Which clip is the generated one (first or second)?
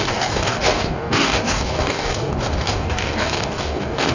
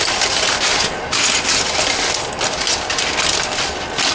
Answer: first